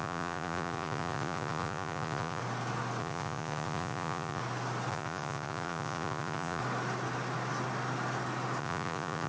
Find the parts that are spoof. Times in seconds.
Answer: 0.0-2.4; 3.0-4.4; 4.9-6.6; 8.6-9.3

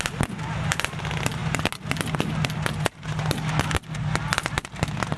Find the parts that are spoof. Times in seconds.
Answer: none

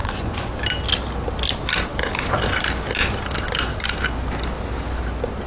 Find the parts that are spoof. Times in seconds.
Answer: 0.0-0.5

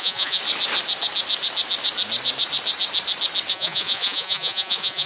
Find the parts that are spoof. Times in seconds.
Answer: 0.0-0.4; 3.5-5.1

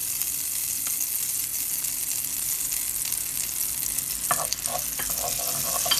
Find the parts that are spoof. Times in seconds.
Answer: none

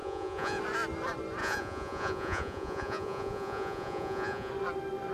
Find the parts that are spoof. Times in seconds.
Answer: 0.0-0.6; 1.4-4.5

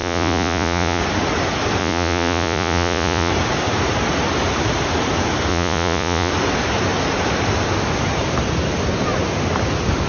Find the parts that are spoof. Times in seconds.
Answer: 0.0-1.0; 1.8-3.3; 5.5-6.3